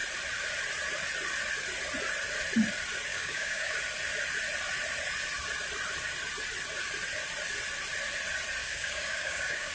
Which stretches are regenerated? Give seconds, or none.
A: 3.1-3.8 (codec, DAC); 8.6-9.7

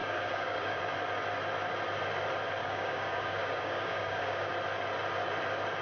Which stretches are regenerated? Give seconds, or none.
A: 0.0-0.8 (codec, DAC); 2.6-4.5